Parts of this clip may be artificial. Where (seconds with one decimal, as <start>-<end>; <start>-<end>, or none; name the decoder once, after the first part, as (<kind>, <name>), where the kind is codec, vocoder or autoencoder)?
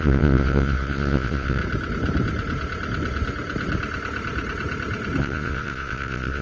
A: 0.0-1.6 (vocoder, Vocos); 5.2-6.4